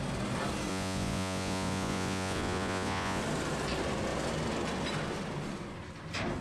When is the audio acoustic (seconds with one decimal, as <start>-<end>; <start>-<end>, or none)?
0.0-0.7; 3.2-6.4